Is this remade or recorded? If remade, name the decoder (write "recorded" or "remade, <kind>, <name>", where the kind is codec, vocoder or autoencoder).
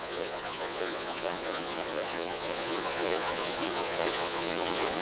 remade, vocoder, Vocos